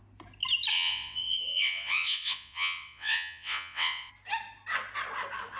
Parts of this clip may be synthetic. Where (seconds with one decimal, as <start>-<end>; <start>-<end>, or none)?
0.7-4.1